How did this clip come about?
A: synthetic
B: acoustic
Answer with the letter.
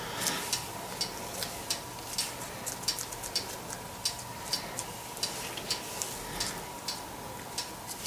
B